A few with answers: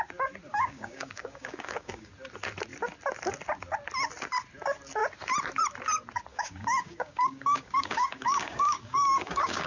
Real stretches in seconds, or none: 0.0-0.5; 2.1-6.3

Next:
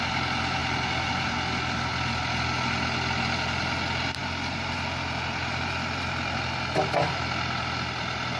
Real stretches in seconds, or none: 0.0-8.4